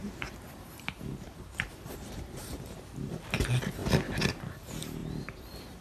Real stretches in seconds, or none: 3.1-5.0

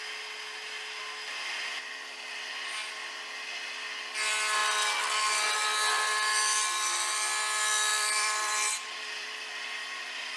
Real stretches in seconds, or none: 0.0-1.7; 2.5-7.9; 10.0-10.4

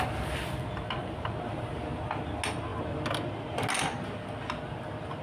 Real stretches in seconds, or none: 0.0-5.2

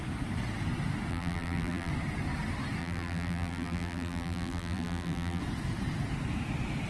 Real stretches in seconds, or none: 0.0-1.1; 1.9-2.8; 5.4-6.9

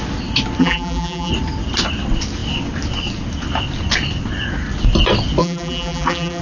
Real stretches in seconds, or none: 0.0-0.6; 1.3-5.4

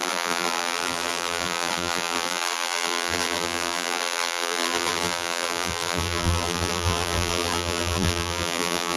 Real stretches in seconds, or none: none